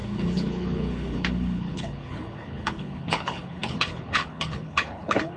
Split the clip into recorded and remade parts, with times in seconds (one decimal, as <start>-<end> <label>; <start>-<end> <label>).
0.0-5.4 remade